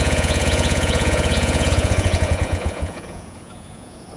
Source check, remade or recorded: remade